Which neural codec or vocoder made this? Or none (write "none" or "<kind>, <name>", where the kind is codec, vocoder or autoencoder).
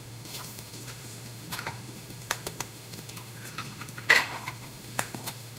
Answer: autoencoder, DAC-VAE